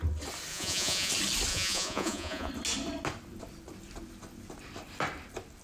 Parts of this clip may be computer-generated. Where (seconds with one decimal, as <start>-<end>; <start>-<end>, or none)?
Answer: 0.5-1.1; 1.5-2.5